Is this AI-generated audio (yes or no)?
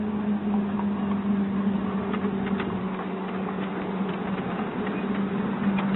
no